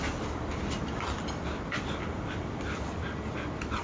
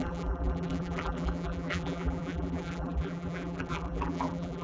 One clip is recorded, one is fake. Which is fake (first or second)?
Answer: second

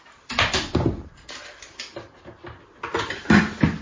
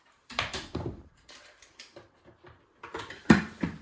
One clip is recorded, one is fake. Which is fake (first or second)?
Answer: second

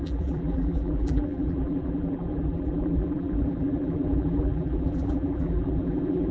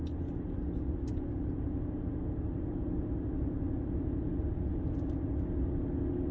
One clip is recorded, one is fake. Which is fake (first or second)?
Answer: first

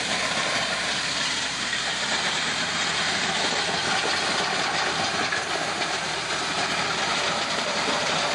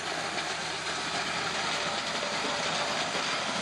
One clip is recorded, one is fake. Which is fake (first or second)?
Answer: first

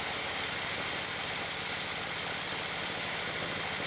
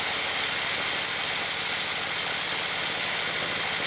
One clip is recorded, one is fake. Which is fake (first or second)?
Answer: first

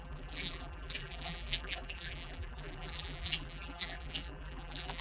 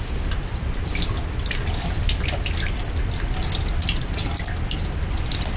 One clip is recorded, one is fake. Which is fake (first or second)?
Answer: first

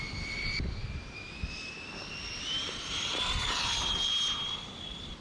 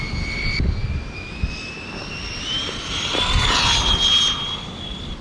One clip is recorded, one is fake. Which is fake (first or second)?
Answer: first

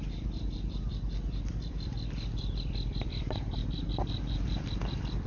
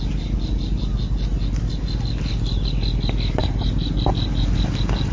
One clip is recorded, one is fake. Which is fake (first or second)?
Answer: first